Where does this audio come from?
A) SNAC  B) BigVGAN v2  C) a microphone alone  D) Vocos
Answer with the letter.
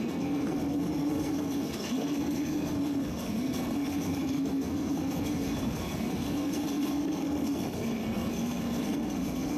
A